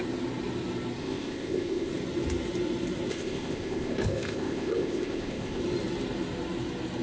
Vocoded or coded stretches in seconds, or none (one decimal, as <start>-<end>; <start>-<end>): 1.0-1.9; 3.1-5.6